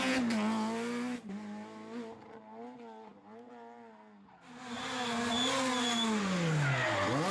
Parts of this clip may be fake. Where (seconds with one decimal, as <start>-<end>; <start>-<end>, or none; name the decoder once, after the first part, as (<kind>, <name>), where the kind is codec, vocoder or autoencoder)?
none

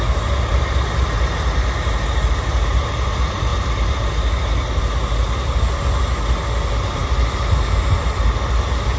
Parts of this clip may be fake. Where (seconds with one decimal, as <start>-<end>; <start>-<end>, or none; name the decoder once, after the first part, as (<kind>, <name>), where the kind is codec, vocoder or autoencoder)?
none

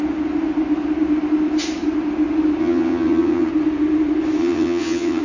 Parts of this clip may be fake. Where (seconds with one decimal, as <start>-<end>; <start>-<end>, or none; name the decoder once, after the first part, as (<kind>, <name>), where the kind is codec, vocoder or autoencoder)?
2.6-3.5 (vocoder, HiFi-GAN); 4.4-5.2

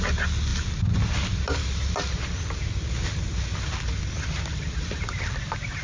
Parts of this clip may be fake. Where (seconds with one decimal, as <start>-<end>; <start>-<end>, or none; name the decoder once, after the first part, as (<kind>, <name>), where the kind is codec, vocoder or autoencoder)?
none

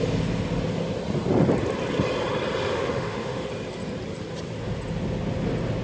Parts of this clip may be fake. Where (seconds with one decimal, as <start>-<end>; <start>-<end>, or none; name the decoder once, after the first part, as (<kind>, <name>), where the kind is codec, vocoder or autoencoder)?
2.7-3.5 (autoencoder, DAC-VAE)